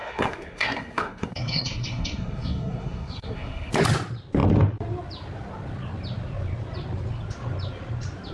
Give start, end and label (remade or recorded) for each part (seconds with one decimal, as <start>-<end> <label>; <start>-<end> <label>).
0.0-3.7 remade; 3.7-8.3 recorded